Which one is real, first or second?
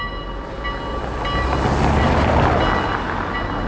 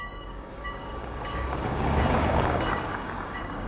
first